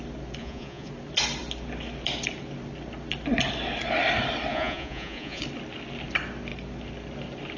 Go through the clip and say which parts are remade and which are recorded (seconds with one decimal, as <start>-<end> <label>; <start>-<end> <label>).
0.0-0.4 recorded; 0.4-0.9 remade; 0.9-4.5 recorded; 4.5-5.4 remade; 5.4-7.6 recorded